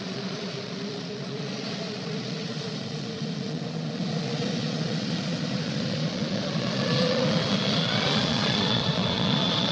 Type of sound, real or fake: fake